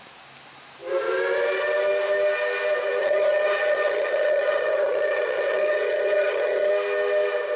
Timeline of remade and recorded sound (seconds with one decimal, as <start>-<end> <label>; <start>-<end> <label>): 0.0-3.0 recorded; 3.0-6.7 remade; 6.7-7.6 recorded